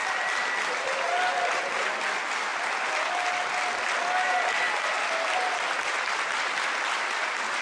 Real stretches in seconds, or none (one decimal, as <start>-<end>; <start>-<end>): 0.0-7.6